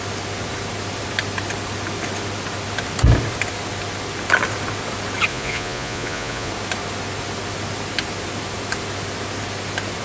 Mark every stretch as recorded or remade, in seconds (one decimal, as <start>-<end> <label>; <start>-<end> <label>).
0.0-5.3 recorded; 5.3-6.5 remade; 6.5-10.0 recorded